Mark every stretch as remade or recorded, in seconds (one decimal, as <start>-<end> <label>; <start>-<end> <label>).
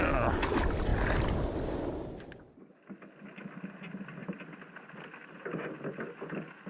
0.0-6.7 recorded